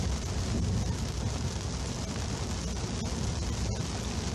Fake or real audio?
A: real